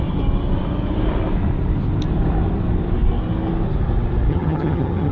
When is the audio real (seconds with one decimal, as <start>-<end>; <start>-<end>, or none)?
0.0-4.3